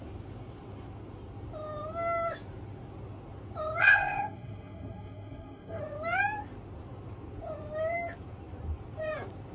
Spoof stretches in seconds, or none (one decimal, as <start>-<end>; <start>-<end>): 3.8-5.8